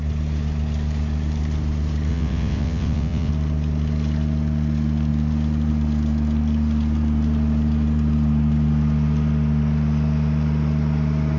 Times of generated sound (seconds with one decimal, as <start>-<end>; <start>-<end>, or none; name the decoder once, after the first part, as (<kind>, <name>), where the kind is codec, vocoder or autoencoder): 2.1-3.3 (vocoder, WaveNeXt)